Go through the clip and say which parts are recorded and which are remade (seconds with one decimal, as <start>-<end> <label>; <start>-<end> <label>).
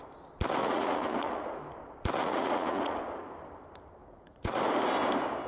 0.0-0.6 recorded; 0.6-1.6 remade; 1.6-2.2 recorded; 2.2-3.0 remade; 3.0-4.0 recorded; 4.0-4.6 remade; 4.6-5.5 recorded